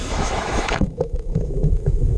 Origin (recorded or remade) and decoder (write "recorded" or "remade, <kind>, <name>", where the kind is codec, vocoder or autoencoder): remade, autoencoder, DAC-VAE